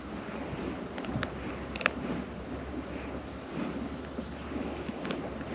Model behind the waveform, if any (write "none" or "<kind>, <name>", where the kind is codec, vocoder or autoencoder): none